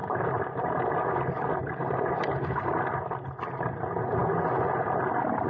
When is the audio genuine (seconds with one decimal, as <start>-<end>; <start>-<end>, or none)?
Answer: 0.9-1.6; 2.1-5.5